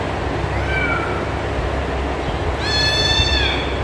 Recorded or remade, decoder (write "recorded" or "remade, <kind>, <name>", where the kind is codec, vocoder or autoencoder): recorded